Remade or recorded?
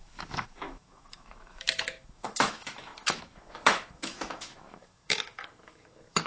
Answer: remade